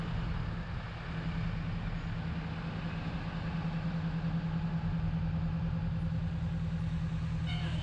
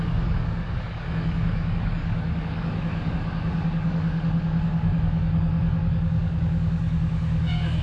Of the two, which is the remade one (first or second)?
second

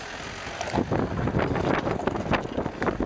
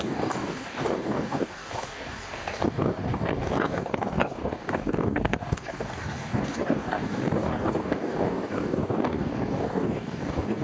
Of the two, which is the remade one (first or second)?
second